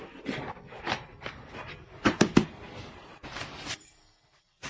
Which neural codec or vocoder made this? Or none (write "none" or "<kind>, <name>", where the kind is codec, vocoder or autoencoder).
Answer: vocoder, BigVGAN v2